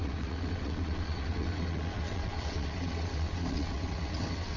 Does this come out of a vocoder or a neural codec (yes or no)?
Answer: yes